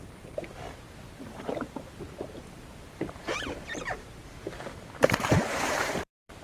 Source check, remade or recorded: remade